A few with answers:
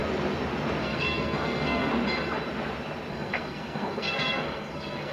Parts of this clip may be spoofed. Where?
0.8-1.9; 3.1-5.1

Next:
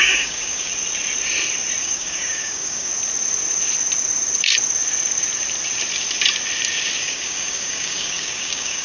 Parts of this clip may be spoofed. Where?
0.0-0.7; 1.8-2.9; 7.0-8.8

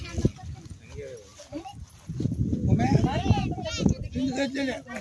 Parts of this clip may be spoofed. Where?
none

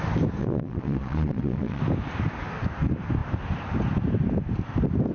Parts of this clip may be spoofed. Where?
0.4-1.8

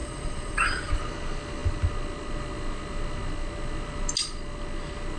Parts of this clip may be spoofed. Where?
0.0-0.9

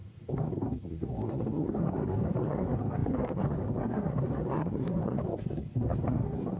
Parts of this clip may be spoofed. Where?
0.0-6.6

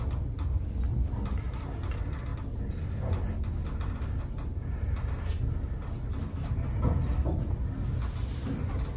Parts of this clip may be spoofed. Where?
none

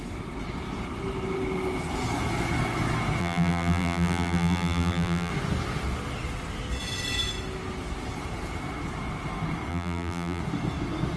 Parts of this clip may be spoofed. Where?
3.2-5.3; 9.7-10.4